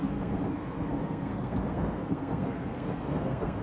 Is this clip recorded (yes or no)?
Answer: no